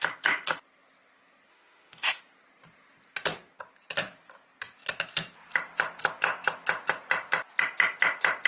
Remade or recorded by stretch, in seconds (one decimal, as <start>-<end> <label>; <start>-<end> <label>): 0.0-1.5 recorded; 1.5-2.2 remade; 2.2-8.5 recorded